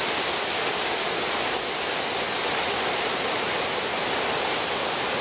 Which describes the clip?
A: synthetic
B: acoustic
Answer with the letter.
B